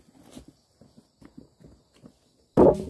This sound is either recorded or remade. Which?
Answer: recorded